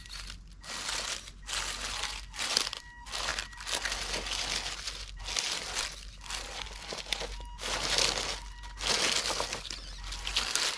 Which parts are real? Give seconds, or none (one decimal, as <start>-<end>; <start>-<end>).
0.0-10.8